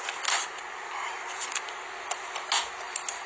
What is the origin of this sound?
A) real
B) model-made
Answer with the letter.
A